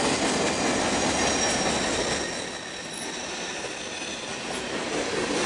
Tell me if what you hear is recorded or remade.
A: recorded